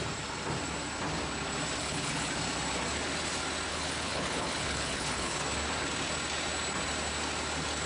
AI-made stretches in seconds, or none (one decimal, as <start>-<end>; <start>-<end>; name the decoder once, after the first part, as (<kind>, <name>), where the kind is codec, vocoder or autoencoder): 1.8-2.3 (codec, HILCodec); 3.7-5.4